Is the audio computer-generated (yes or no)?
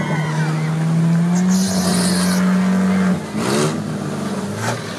no